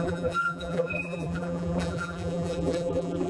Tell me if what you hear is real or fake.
fake